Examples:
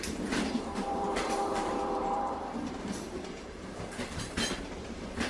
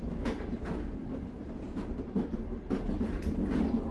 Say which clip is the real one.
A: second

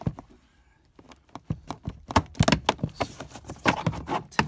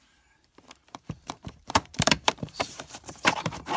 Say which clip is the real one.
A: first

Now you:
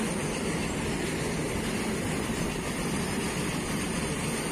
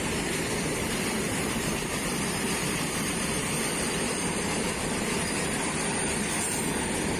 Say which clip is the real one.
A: first